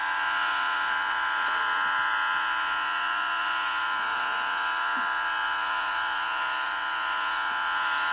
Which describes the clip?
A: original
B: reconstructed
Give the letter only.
B